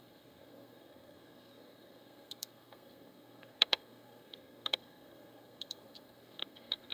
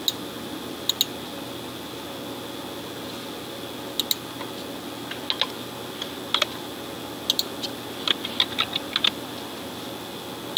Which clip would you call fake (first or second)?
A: first